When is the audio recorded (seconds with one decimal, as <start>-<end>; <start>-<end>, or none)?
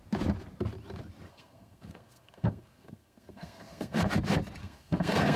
0.0-1.3; 4.1-4.6